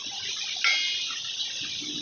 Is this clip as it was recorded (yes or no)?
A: yes